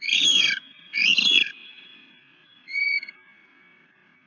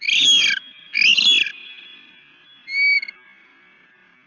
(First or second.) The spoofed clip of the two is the first